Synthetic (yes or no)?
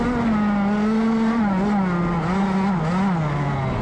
no